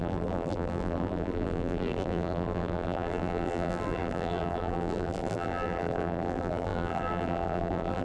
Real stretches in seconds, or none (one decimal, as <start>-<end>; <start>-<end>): none